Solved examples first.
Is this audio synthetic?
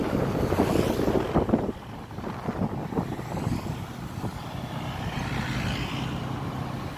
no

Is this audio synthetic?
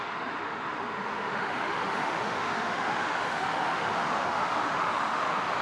yes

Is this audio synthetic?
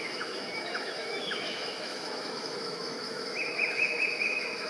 yes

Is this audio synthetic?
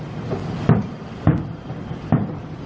no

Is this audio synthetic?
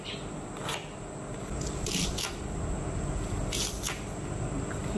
no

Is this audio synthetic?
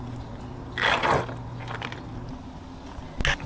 no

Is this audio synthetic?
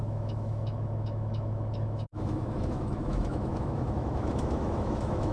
yes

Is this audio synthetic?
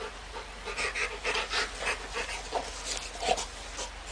no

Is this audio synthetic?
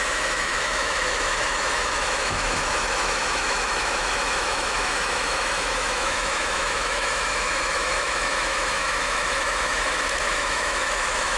yes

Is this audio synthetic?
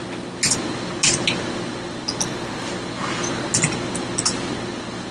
no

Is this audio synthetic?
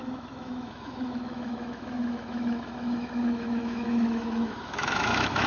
yes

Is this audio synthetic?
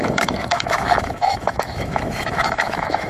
yes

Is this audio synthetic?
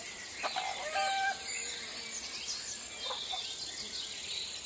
no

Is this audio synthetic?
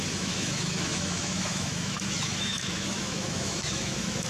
yes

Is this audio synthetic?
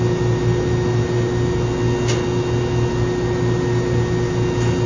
no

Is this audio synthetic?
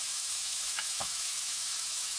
yes